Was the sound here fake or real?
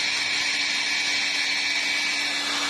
real